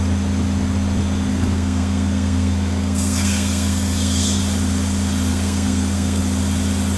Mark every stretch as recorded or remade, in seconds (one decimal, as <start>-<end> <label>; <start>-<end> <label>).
0.0-1.3 recorded; 1.3-4.4 remade; 4.4-5.3 recorded; 5.3-6.2 remade; 6.2-7.0 recorded